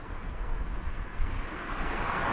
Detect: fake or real fake